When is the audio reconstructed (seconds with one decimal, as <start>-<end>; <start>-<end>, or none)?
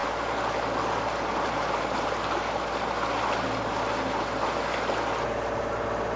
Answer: none